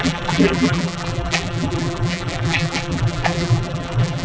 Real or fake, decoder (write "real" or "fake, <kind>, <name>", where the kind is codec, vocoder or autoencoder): fake, vocoder, BigVGAN v2